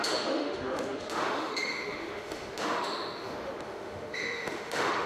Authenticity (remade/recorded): remade